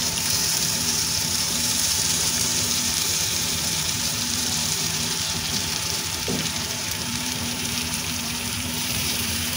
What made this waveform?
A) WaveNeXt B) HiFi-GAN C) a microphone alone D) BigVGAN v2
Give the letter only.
D